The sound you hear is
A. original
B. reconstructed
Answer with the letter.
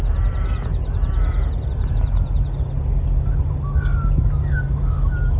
A